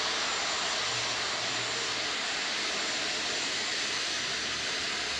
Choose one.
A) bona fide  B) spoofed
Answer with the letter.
A